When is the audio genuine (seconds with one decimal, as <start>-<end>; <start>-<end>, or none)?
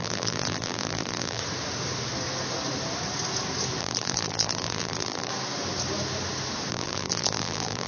1.4-3.8; 5.3-6.7